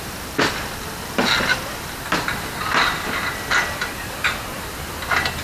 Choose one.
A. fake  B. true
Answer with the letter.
B